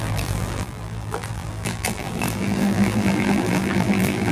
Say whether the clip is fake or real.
fake